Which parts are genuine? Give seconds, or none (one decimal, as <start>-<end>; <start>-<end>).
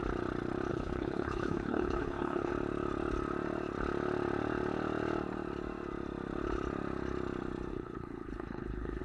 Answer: 0.0-0.7; 2.5-7.7